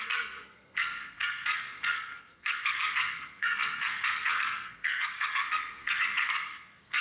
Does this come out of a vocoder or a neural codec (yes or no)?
yes